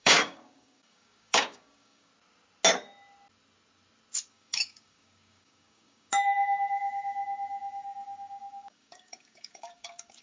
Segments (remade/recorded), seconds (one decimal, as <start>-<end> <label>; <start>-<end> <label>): 0.0-2.1 remade; 2.1-4.3 recorded; 4.3-10.2 remade